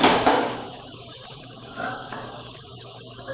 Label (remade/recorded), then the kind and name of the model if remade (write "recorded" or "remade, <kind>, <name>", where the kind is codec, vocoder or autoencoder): remade, codec, DAC